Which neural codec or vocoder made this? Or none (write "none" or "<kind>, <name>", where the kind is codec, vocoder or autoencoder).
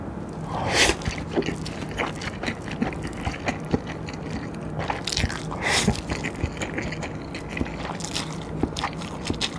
none